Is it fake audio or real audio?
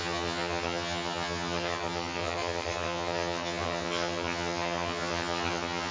fake